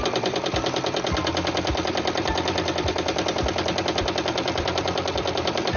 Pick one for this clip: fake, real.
fake